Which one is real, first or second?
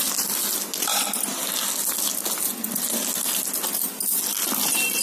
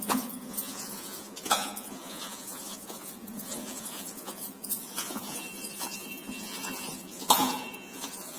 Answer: first